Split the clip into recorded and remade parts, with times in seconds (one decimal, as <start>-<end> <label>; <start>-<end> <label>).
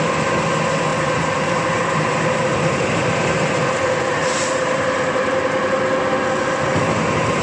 0.0-0.9 recorded; 0.9-5.3 remade; 5.3-7.4 recorded